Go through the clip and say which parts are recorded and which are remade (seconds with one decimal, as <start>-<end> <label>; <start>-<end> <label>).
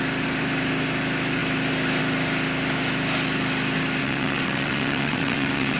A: 0.0-4.0 recorded; 4.0-5.8 remade